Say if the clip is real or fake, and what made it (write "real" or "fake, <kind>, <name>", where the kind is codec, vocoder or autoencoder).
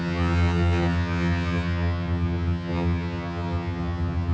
fake, vocoder, HiFi-GAN